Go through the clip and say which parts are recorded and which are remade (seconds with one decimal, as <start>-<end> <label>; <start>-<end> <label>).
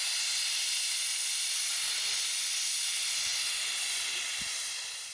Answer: 0.0-5.1 recorded